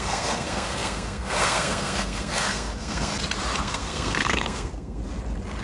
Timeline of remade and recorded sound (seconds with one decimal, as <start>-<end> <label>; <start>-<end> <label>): 0.0-3.1 remade; 3.1-3.6 recorded; 3.6-5.0 remade; 5.0-5.6 recorded